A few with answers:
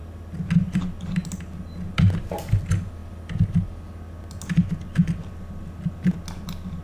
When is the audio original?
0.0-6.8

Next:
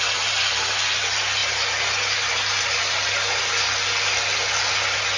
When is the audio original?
0.0-5.2

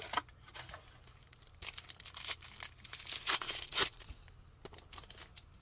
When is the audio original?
0.0-3.2; 4.1-5.6